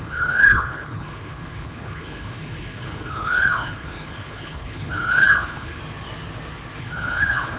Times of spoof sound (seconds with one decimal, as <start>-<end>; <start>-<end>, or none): 0.0-5.8; 6.8-7.6